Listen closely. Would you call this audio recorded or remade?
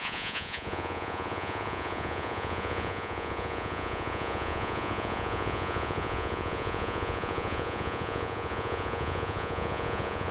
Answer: remade